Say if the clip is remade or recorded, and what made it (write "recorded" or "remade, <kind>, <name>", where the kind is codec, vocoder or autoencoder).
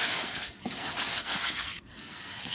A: remade, codec, SNAC